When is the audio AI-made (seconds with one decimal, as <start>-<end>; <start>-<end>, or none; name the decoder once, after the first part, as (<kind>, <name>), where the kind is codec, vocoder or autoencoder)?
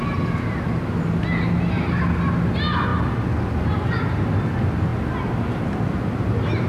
none